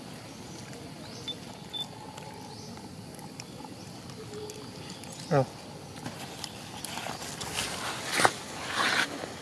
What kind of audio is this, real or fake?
real